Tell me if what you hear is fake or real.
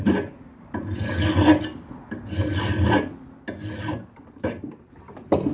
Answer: real